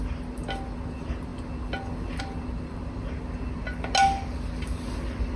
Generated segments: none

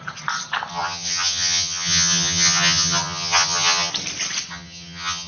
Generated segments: 0.7-3.9 (vocoder, HiFi-GAN); 4.5-5.3

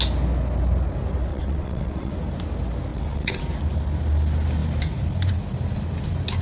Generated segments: 1.3-2.1 (vocoder, WaveNeXt); 2.9-3.4

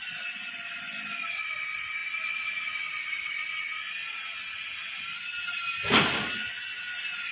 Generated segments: none

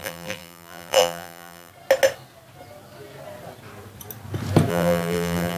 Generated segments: 0.0-1.7 (vocoder, BigVGAN v2); 4.7-5.6

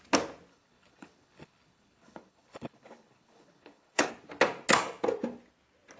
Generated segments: 0.5-4.1 (codec, HILCodec)